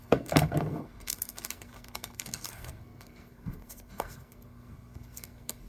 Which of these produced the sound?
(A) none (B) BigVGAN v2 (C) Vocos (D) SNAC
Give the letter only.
D